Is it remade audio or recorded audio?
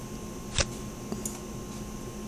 recorded